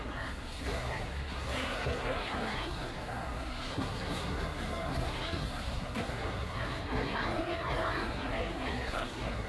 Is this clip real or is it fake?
fake